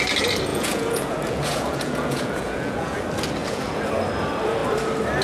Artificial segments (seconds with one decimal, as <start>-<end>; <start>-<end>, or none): 0.5-3.0; 3.4-3.9